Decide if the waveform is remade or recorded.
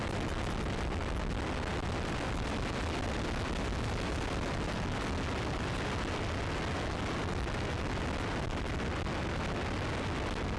recorded